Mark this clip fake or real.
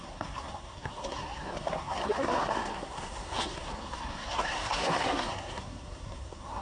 fake